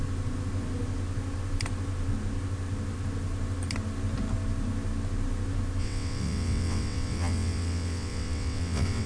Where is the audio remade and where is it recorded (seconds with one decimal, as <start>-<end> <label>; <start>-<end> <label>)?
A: 0.0-5.8 recorded; 5.8-9.1 remade